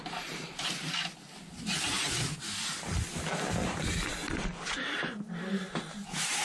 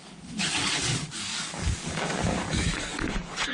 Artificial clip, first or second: second